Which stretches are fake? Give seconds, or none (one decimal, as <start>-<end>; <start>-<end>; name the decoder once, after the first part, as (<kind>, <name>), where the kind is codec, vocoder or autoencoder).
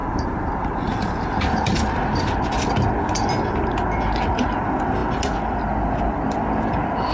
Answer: 0.0-0.5 (vocoder, BigVGAN v2); 1.7-2.3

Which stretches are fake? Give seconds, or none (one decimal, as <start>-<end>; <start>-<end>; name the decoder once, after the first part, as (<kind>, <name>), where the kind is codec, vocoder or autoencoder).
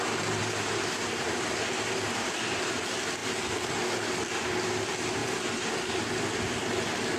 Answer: 0.4-2.6 (vocoder, BigVGAN v2); 5.2-6.7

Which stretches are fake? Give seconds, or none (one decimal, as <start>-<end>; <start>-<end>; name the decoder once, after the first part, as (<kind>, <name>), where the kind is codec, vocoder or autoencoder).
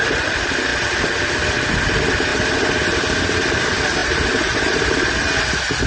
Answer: 4.0-4.9 (vocoder, BigVGAN v2)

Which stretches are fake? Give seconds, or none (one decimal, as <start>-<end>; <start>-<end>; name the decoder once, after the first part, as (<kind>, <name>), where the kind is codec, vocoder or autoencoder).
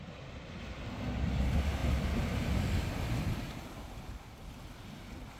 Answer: none